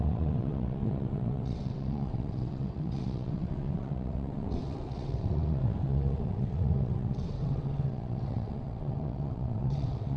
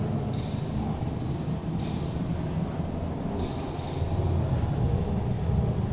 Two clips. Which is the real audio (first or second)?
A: second